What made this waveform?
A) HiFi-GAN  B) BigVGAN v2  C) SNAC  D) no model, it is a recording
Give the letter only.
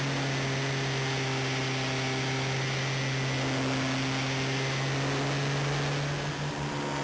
D